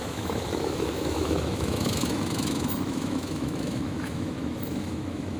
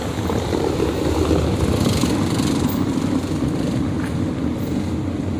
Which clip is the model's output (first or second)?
first